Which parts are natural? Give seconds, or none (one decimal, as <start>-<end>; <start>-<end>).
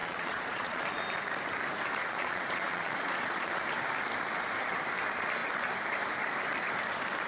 1.0-2.0; 3.5-7.3